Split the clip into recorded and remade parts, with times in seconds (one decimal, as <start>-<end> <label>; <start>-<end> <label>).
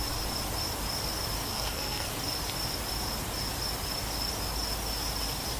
0.0-1.5 recorded; 1.5-2.1 remade; 2.1-5.6 recorded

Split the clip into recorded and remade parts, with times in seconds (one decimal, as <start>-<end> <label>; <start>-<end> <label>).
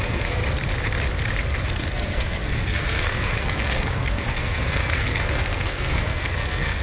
0.0-0.4 remade; 0.4-1.7 recorded; 1.7-6.8 remade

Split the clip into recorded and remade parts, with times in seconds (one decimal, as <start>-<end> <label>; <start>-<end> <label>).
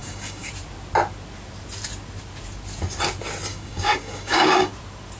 0.0-0.5 remade; 0.5-3.5 recorded; 3.5-4.7 remade; 4.7-5.2 recorded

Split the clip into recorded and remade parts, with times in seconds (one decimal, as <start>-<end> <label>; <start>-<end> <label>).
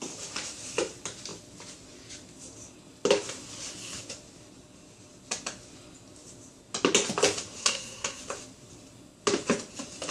0.0-7.6 recorded; 7.6-8.2 remade; 8.2-10.1 recorded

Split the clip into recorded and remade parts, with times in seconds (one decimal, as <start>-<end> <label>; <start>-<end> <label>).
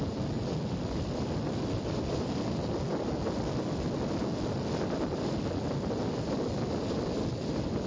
0.0-7.9 recorded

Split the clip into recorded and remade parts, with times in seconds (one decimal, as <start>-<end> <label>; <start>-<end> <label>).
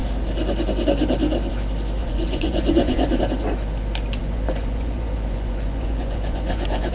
0.0-2.0 recorded; 2.0-3.2 remade; 3.2-4.2 recorded; 4.2-6.9 remade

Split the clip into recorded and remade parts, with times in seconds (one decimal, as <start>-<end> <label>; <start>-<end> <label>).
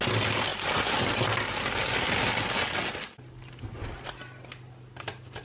0.0-5.4 recorded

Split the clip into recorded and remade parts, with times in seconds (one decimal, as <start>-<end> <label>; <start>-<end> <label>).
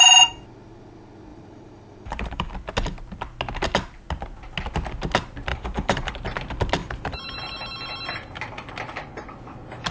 0.0-1.3 recorded; 1.3-2.5 remade; 2.5-5.5 recorded; 5.5-6.1 remade; 6.1-6.8 recorded; 6.8-7.4 remade; 7.4-9.9 recorded